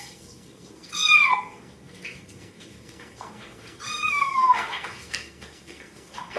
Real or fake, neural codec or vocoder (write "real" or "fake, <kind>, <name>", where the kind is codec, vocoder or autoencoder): fake, codec, SNAC